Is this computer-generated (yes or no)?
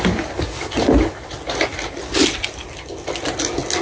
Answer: no